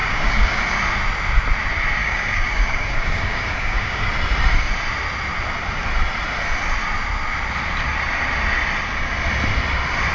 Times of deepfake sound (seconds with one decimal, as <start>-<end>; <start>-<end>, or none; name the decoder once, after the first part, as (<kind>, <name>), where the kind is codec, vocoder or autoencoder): 0.0-0.6 (codec, DAC); 2.0-4.1